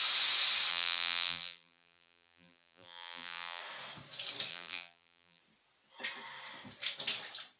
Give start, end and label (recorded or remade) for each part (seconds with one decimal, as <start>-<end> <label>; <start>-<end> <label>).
0.0-0.7 recorded; 0.7-3.6 remade; 3.6-4.5 recorded; 4.5-5.4 remade; 5.4-7.6 recorded